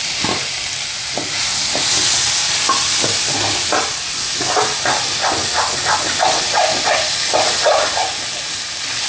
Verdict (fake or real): real